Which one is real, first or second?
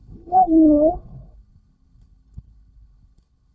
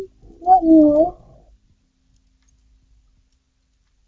second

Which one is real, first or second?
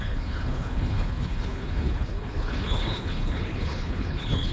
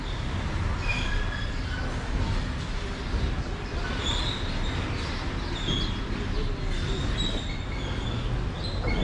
second